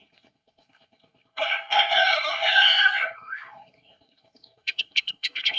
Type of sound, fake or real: fake